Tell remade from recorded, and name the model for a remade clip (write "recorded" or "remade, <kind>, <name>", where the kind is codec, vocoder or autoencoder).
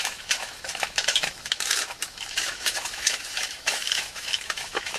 remade, autoencoder, DAC-VAE